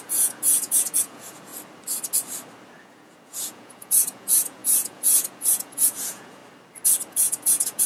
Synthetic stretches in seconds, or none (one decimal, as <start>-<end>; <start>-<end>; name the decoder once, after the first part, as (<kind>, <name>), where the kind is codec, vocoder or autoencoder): 0.0-1.5 (vocoder, Vocos); 2.8-6.4; 7.1-7.9